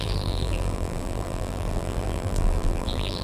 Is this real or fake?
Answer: fake